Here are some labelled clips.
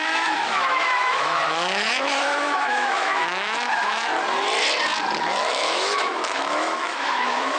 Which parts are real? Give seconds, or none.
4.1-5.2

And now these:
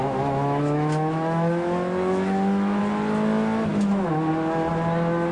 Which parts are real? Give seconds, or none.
2.8-3.7; 4.3-5.3